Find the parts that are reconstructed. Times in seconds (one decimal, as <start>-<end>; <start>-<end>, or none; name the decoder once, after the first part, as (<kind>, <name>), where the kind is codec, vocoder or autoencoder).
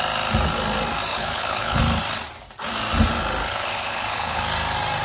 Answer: 1.1-1.8 (codec, HILCodec); 3.4-4.4